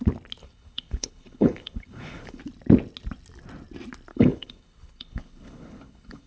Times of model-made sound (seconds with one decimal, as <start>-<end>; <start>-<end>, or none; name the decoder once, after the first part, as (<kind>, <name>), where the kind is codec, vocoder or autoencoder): 0.4-2.4 (codec, HILCodec); 4.1-6.3